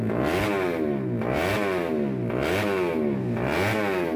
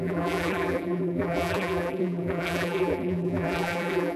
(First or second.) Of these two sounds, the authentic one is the first